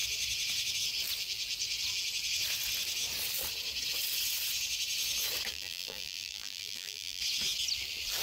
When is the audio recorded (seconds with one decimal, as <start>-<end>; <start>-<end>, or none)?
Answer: 0.0-5.5; 7.2-8.2